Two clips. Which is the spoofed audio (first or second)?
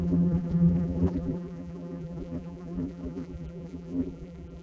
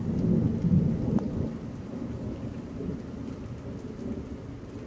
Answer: first